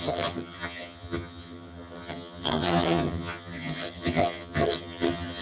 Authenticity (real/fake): fake